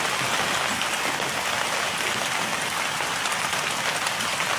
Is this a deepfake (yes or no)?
no